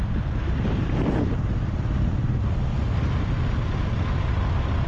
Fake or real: real